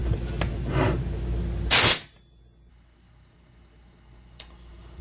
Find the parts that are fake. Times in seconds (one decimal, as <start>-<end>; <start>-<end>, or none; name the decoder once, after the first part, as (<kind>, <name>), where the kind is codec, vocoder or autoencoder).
2.7-5.0 (codec, HILCodec)